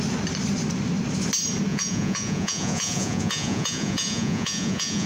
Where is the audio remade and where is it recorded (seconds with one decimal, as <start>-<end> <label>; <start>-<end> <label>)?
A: 0.0-1.7 recorded; 1.7-5.1 remade